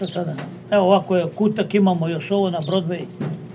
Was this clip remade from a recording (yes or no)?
no